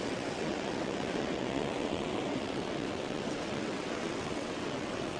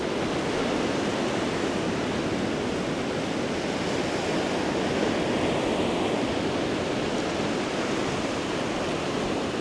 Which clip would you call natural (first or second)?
second